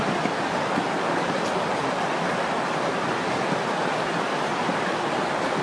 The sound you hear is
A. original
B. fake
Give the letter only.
A